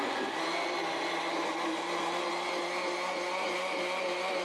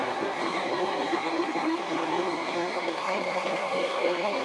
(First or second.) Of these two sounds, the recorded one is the first